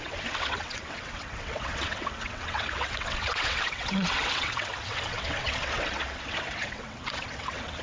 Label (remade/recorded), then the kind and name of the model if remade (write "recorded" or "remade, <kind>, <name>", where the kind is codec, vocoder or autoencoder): remade, vocoder, WaveNeXt